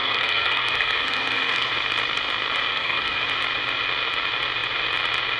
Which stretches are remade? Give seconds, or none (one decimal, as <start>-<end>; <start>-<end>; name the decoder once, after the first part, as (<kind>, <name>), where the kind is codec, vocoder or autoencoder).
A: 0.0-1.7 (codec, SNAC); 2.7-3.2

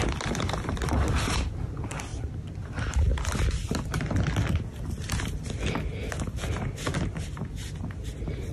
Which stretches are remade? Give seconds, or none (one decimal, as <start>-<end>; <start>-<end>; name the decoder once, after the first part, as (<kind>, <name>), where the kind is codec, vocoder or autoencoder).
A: none

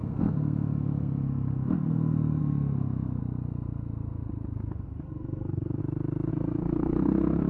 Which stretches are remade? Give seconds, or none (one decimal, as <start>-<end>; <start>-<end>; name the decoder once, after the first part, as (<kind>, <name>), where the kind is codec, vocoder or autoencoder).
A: 0.0-3.2 (codec, SNAC); 4.7-5.8; 6.3-7.5